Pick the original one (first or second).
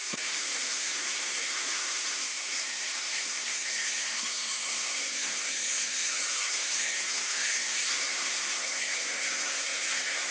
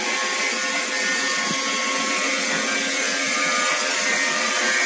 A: second